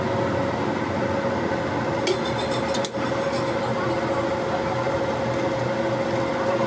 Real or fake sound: real